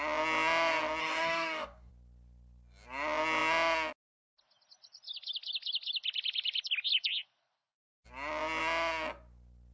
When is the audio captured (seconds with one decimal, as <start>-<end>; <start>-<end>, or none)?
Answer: 0.0-1.0; 1.9-9.7